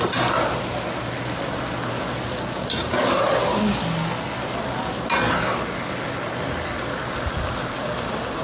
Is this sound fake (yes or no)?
no